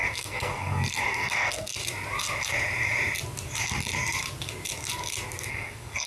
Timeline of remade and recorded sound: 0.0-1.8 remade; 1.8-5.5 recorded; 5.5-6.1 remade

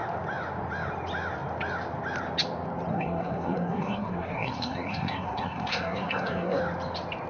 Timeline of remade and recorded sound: 0.0-2.9 recorded; 2.9-6.6 remade; 6.6-7.3 recorded

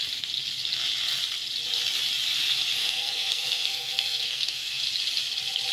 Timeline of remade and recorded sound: 0.0-2.8 recorded; 2.8-4.8 remade; 4.8-5.7 recorded

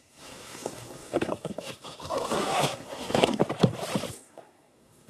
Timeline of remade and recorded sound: 0.0-3.4 remade; 3.4-4.1 recorded; 4.1-5.1 remade

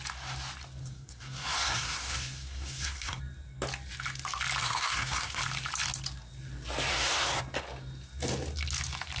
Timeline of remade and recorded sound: 0.0-0.8 recorded; 0.8-3.2 remade; 3.2-4.6 recorded; 4.6-5.4 remade; 5.4-6.9 recorded; 6.9-7.4 remade; 7.4-9.2 recorded

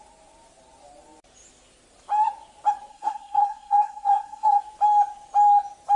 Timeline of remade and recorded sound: 0.0-2.9 recorded; 2.9-4.6 remade; 4.6-6.0 recorded

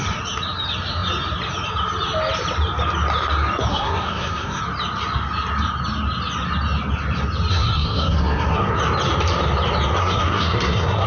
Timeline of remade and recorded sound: 0.0-3.7 recorded; 3.7-4.6 remade; 4.6-7.5 recorded; 7.5-8.8 remade; 8.8-10.0 recorded; 10.0-11.1 remade

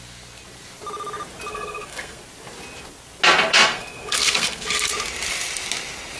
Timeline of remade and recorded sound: 0.0-1.5 recorded; 1.5-2.2 remade; 2.2-3.5 recorded; 3.5-4.9 remade; 4.9-6.2 recorded